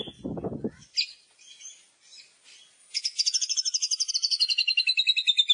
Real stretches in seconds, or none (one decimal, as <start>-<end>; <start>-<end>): 0.0-2.8; 4.1-5.5